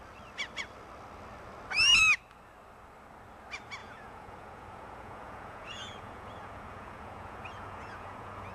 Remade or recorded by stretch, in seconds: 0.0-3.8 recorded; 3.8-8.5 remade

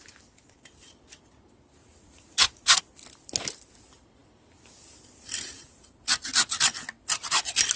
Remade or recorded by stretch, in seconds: 0.0-1.8 recorded; 1.8-2.8 remade; 2.8-7.8 recorded

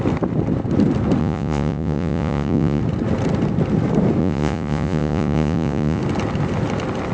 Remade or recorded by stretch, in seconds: 0.0-1.2 recorded; 1.2-2.8 remade; 2.8-4.2 recorded; 4.2-6.0 remade; 6.0-7.1 recorded

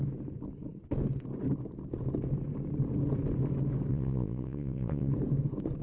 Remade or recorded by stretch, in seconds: 0.0-3.9 recorded; 3.9-5.1 remade; 5.1-5.8 recorded